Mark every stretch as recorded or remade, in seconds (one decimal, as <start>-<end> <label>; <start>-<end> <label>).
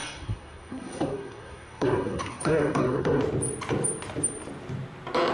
0.0-3.2 remade; 3.2-5.3 recorded